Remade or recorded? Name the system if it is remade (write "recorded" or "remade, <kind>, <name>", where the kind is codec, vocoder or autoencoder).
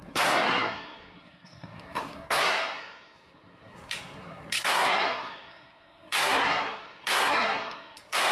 remade, codec, SNAC